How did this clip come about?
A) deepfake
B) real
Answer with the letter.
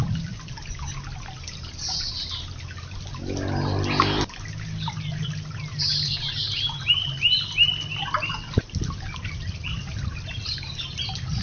B